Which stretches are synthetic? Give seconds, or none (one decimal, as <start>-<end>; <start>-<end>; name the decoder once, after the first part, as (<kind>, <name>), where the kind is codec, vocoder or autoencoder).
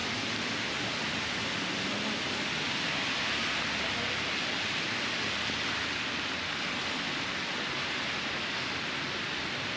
none